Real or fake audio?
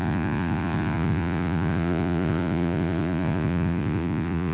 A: fake